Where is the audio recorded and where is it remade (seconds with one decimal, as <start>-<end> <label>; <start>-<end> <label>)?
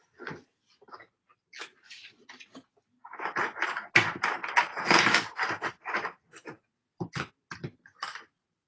0.0-8.7 recorded